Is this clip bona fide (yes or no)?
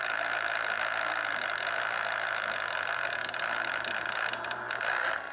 yes